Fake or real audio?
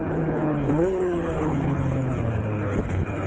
fake